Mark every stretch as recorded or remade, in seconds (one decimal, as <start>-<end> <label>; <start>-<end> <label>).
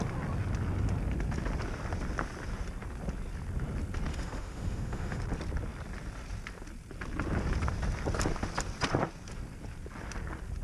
0.0-4.1 recorded; 4.1-5.2 remade; 5.2-10.6 recorded